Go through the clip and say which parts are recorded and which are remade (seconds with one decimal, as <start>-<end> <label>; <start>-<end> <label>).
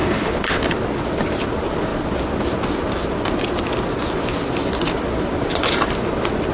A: 0.0-0.6 remade; 0.6-6.5 recorded